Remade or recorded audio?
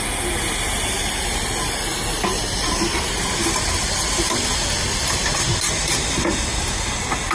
recorded